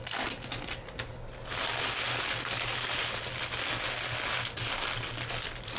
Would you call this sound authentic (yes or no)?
yes